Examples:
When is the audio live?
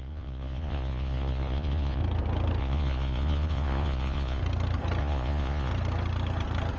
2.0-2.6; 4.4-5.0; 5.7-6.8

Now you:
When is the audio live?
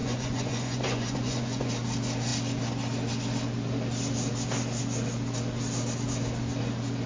1.7-7.1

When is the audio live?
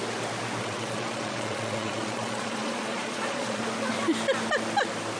0.0-0.6; 3.6-5.2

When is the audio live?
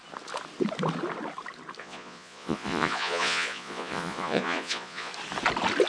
0.0-1.8; 5.1-5.9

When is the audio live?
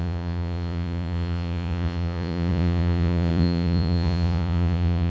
none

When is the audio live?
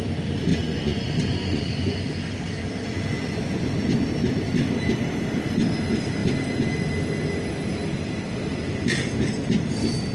0.0-0.5; 2.0-3.1; 3.9-10.1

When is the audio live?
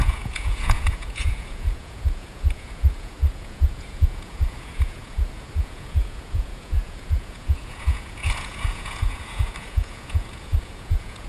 none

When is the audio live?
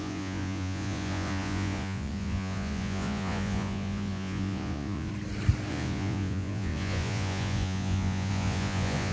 5.1-5.7